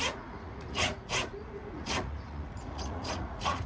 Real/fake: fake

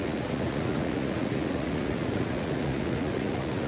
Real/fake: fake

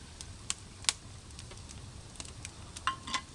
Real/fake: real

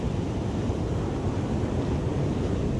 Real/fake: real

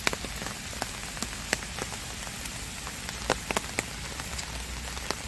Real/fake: real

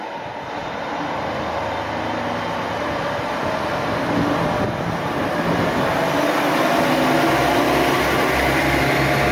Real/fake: real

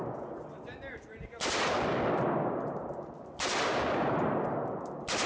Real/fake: real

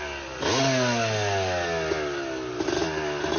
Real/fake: real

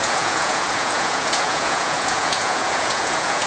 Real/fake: fake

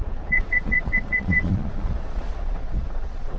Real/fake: fake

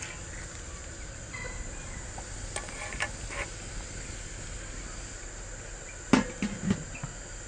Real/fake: real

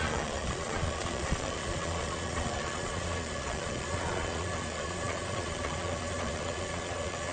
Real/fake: fake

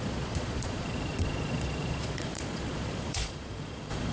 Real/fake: fake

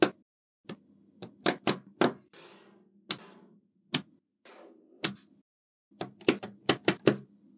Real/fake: real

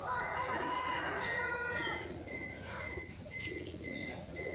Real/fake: fake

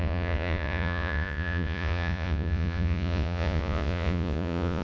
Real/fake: fake